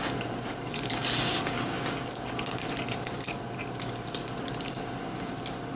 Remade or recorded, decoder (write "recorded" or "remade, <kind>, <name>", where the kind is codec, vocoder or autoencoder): recorded